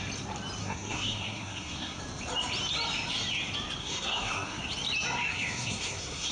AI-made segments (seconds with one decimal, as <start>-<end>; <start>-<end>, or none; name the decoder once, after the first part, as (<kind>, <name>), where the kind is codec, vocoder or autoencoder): 0.6-2.0 (codec, SNAC); 3.8-4.6; 5.3-6.3